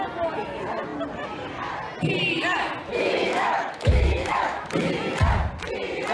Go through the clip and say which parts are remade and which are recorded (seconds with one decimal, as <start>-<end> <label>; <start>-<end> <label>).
0.0-2.9 recorded; 2.9-4.7 remade; 4.7-6.1 recorded